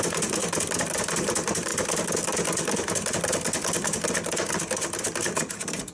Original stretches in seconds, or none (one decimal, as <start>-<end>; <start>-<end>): 0.4-1.0; 1.7-5.2

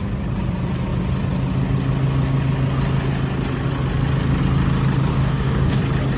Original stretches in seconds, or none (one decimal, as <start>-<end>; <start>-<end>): 0.0-5.1; 5.8-6.2